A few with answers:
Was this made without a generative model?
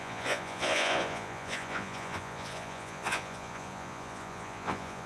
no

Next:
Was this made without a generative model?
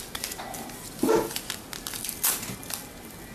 yes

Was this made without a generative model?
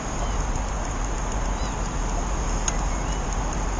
yes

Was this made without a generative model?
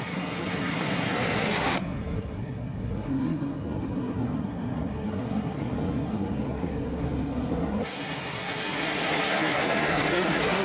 no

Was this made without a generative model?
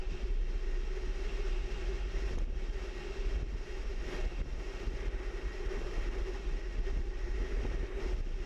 yes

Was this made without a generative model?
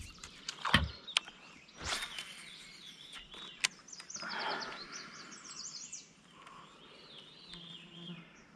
yes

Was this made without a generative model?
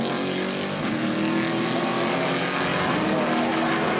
yes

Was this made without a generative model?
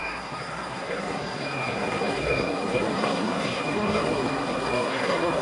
no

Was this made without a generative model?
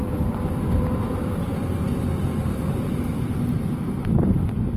yes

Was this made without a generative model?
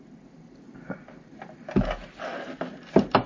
yes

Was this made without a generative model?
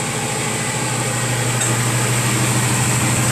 yes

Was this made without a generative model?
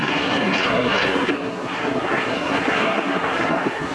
no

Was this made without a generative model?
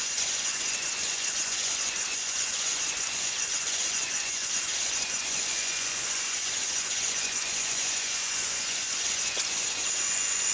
no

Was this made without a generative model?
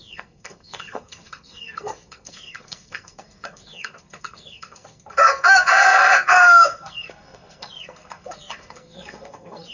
no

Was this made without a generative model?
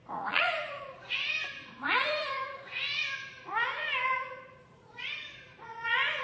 no